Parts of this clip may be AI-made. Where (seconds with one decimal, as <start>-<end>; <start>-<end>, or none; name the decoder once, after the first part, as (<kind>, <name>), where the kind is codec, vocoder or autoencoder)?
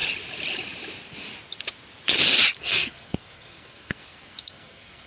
2.6-5.1 (codec, SNAC)